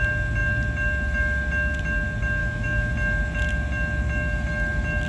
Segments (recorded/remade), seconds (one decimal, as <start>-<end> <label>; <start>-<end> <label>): 0.0-2.4 recorded; 2.4-2.9 remade; 2.9-5.1 recorded